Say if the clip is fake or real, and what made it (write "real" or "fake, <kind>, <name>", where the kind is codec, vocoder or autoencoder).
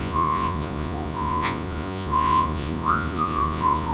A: fake, vocoder, Vocos